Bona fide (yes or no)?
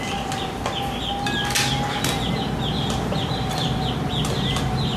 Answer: yes